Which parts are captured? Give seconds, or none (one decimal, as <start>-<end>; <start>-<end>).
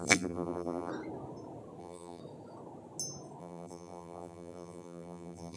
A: 0.9-1.8; 2.2-3.4